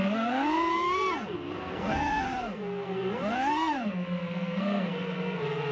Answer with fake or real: fake